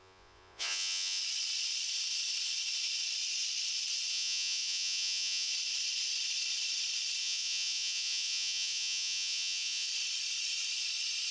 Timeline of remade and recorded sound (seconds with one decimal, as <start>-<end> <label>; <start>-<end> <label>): 0.0-1.2 remade; 1.2-4.1 recorded; 4.1-5.5 remade; 5.5-7.2 recorded; 7.2-9.9 remade; 9.9-11.3 recorded